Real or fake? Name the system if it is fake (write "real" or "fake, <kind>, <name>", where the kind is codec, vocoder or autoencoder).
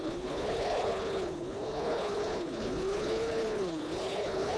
fake, codec, HILCodec